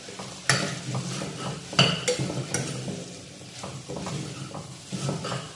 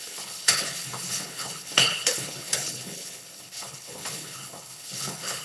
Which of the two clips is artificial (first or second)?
second